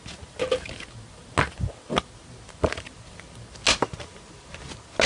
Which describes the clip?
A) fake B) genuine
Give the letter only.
B